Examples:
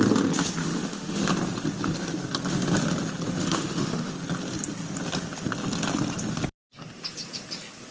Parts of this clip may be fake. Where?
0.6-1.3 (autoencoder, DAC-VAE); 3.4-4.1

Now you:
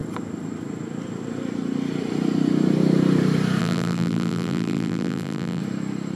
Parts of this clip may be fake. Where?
3.6-5.6 (vocoder, BigVGAN v2)